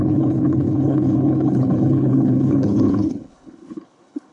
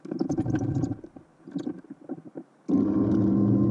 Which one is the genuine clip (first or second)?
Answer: second